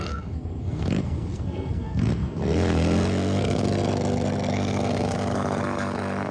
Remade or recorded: remade